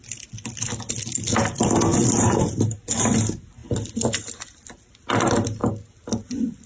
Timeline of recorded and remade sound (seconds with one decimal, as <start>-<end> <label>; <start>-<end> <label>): 0.0-6.7 recorded